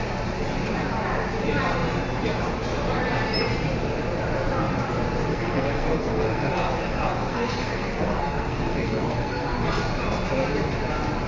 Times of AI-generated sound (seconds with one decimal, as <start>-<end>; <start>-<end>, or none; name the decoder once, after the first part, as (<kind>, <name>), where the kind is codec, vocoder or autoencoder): 5.3-9.8 (codec, SNAC)